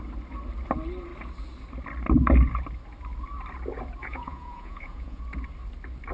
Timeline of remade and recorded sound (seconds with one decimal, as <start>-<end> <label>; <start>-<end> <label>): 0.0-4.0 recorded; 4.0-5.2 remade; 5.2-6.1 recorded